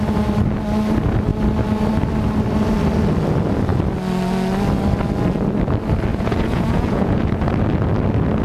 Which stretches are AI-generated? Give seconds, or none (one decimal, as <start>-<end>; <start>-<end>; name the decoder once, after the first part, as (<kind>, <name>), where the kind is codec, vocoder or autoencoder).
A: 6.1-7.4 (vocoder, Vocos)